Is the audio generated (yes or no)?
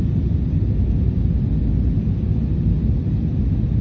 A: no